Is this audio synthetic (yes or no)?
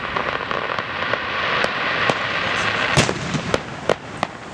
no